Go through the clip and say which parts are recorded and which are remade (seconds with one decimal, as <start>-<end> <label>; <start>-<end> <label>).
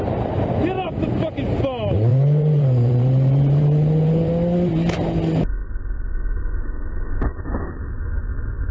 0.0-2.1 recorded; 2.1-4.3 remade; 4.3-8.7 recorded